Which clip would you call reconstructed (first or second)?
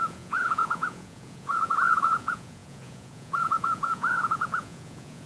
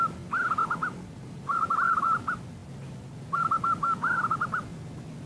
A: first